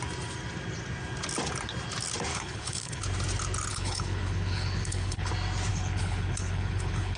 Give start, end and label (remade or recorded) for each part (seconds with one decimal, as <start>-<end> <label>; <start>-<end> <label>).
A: 0.0-2.3 recorded; 2.3-3.0 remade; 3.0-3.7 recorded; 3.7-5.3 remade; 5.3-5.7 recorded; 5.7-7.2 remade